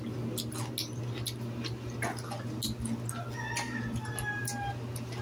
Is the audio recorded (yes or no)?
yes